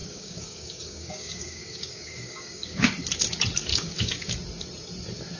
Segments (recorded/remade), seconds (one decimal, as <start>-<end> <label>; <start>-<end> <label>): 0.0-2.9 remade; 2.9-3.7 recorded; 3.7-4.3 remade; 4.3-5.4 recorded

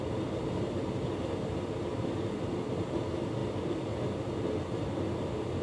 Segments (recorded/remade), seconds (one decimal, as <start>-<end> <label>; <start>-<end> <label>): 0.0-3.4 remade; 3.4-4.4 recorded; 4.4-5.6 remade

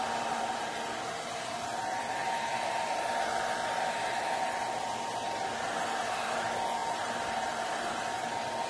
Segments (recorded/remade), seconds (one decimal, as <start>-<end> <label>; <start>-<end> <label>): 0.0-6.8 recorded; 6.8-8.0 remade; 8.0-8.7 recorded

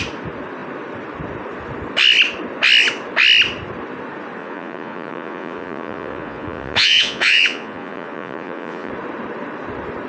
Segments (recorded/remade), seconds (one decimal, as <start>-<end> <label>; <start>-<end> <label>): 0.0-4.4 recorded; 4.4-8.9 remade; 8.9-10.1 recorded

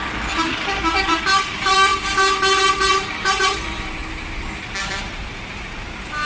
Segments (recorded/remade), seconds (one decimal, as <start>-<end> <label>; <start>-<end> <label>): 0.0-1.9 remade; 1.9-2.7 recorded; 2.7-4.0 remade; 4.0-4.8 recorded; 4.8-5.5 remade; 5.5-6.3 recorded

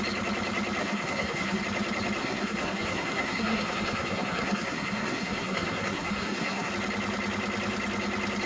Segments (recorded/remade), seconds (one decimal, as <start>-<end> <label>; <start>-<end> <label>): 0.0-0.8 recorded; 0.8-1.6 remade; 1.6-2.2 recorded; 2.2-6.7 remade; 6.7-8.5 recorded